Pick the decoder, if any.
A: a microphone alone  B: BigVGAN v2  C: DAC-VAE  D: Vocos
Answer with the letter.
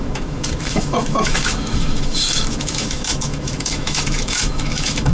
C